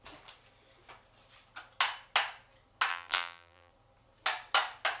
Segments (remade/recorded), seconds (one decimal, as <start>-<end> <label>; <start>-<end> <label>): 0.0-2.9 recorded; 2.9-3.7 remade; 3.7-5.0 recorded

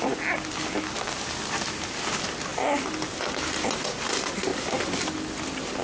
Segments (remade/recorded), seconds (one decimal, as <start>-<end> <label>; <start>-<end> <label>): 0.0-5.8 recorded

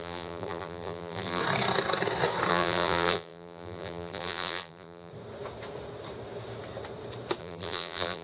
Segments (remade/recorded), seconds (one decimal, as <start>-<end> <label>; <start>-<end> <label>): 0.0-1.4 remade; 1.4-2.5 recorded; 2.5-5.1 remade; 5.1-7.4 recorded; 7.4-8.2 remade

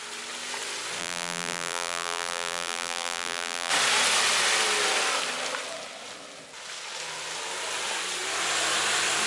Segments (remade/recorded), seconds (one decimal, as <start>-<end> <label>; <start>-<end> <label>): 0.0-1.0 recorded; 1.0-3.7 remade; 3.7-9.3 recorded

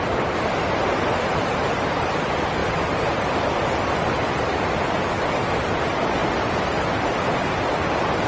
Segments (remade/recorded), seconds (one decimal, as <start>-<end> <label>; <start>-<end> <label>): 0.0-8.3 recorded

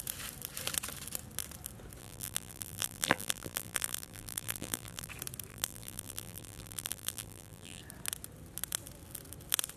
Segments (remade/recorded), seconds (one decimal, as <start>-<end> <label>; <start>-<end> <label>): 0.0-2.0 recorded; 2.0-5.1 remade; 5.1-5.5 recorded; 5.5-7.8 remade; 7.8-9.8 recorded